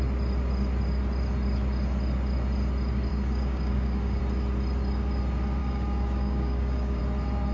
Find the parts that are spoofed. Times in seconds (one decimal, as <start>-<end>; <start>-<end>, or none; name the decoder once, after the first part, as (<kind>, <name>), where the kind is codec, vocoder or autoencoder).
3.1-4.2 (codec, DAC); 5.6-7.0